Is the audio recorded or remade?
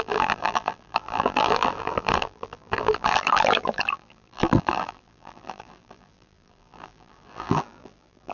remade